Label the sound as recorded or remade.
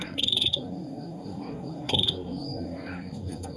remade